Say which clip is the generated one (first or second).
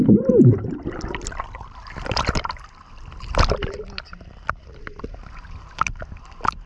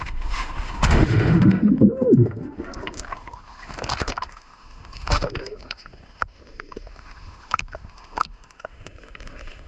second